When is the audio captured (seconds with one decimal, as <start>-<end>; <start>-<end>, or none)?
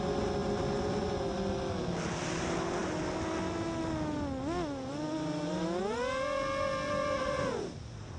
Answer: 0.0-8.2